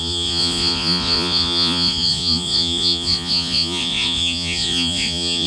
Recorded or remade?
remade